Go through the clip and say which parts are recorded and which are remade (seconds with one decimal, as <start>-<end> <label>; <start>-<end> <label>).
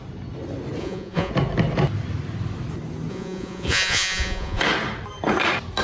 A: 0.0-0.8 recorded; 0.8-1.3 remade; 1.3-3.1 recorded; 3.1-4.6 remade; 4.6-5.8 recorded